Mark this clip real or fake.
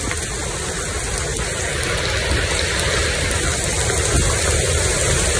real